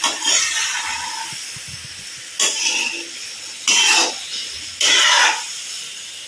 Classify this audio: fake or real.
real